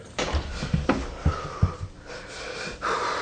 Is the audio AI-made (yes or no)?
no